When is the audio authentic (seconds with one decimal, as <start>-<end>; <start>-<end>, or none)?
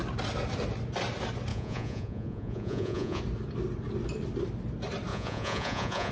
0.0-1.5; 3.2-5.1